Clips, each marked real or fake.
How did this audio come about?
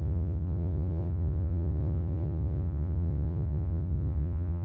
fake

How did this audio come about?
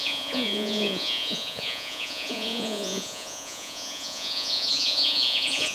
fake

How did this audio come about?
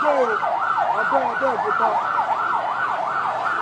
real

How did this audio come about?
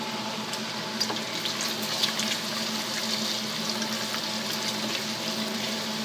real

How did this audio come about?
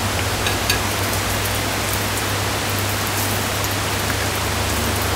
real